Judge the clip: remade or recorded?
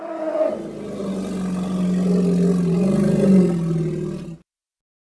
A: recorded